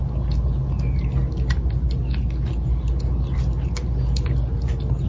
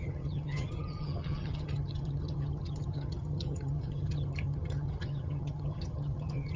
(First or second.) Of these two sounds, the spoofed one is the second